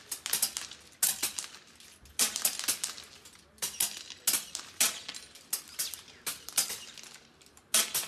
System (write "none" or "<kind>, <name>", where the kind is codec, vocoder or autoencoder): none